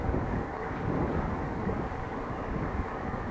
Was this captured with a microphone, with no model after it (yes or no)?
no